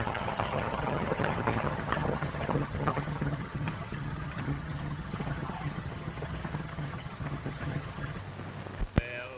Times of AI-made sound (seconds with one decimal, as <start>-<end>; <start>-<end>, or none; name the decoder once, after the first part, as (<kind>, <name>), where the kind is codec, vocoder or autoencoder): 0.0-8.2 (vocoder, HiFi-GAN)